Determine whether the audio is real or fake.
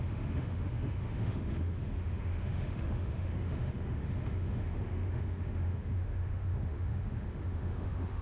fake